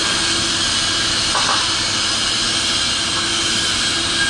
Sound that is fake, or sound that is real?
real